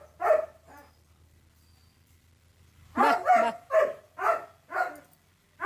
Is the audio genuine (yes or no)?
yes